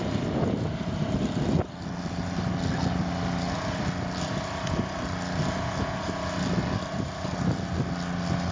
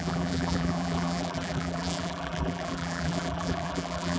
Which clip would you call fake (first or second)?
second